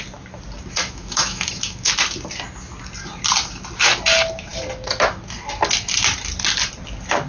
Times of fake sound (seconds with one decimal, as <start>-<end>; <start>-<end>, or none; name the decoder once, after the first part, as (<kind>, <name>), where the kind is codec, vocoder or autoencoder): 0.8-1.9 (autoencoder, DAC-VAE)